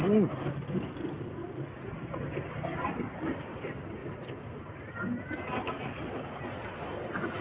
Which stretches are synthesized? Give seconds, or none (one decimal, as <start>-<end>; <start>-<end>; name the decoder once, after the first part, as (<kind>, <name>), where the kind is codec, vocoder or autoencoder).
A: none